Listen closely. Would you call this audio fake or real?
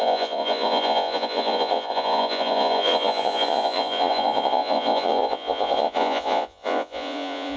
fake